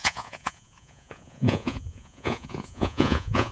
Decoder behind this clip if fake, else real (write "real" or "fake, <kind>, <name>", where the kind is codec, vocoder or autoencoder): fake, vocoder, Vocos